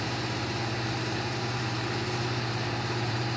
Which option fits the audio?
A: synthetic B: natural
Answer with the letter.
A